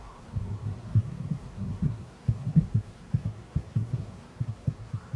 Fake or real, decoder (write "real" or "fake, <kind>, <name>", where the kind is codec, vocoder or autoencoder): fake, codec, SNAC